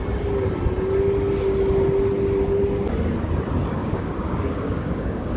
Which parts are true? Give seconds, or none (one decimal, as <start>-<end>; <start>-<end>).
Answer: 0.0-3.8